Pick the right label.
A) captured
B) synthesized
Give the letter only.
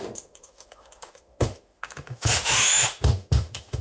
B